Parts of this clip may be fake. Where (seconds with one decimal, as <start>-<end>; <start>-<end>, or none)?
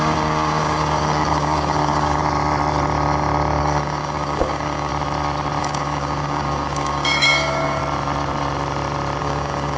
0.0-2.2; 3.6-4.9; 5.6-7.8; 9.2-9.8